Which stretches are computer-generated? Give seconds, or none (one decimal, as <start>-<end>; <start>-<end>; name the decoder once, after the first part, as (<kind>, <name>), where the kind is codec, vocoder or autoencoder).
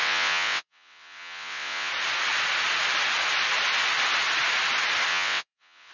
0.0-1.9 (vocoder, WaveNeXt); 5.1-5.9